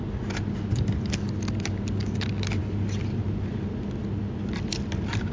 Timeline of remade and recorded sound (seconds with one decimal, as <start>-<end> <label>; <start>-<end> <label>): 0.0-5.3 recorded